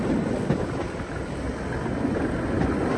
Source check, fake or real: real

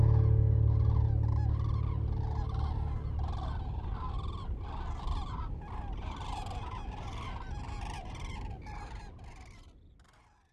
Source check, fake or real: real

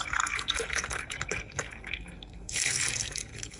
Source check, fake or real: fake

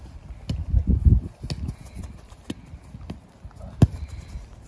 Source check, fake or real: real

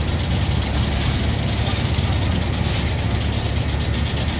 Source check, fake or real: real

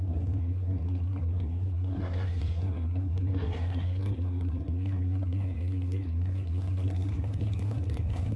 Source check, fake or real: fake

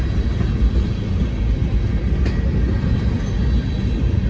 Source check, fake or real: real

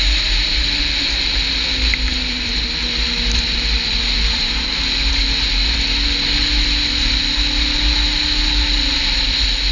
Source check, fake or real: real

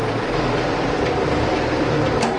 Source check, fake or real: fake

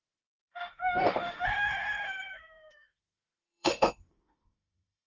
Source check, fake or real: fake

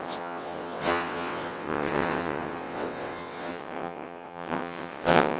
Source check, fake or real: fake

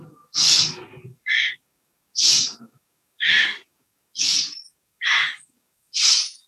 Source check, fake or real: fake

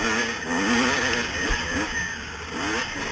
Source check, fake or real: real